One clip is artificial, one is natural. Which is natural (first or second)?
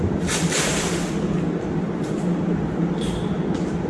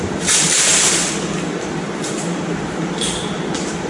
first